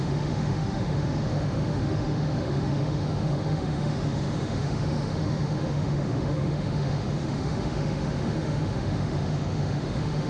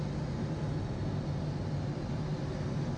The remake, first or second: first